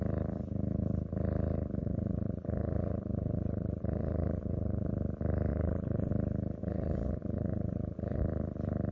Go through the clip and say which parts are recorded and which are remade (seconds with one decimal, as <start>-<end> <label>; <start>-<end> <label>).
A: 0.0-1.8 recorded; 1.8-4.9 remade; 4.9-5.5 recorded; 5.5-6.1 remade; 6.1-6.6 recorded; 6.6-8.2 remade; 8.2-8.9 recorded